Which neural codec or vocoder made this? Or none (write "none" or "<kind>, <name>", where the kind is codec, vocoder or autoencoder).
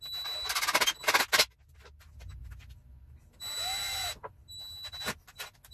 none